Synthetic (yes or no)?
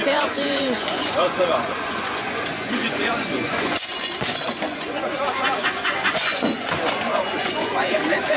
yes